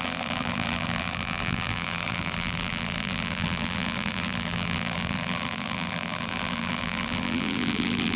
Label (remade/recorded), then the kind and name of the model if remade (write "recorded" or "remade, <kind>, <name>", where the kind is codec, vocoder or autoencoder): remade, vocoder, BigVGAN v2